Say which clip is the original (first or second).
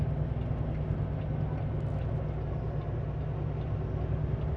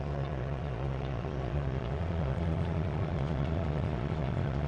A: first